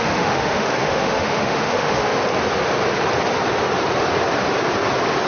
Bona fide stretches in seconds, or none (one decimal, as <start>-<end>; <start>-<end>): 2.1-5.3